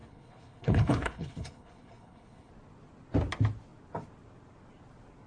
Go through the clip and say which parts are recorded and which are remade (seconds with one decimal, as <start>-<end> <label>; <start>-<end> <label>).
0.0-2.5 remade; 2.5-5.3 recorded